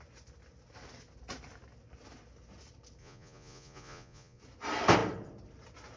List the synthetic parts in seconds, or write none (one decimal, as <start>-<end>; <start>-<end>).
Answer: 3.0-4.4